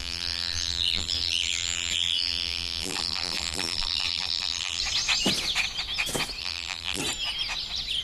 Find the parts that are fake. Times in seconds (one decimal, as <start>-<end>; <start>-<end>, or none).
0.0-4.8; 6.4-7.0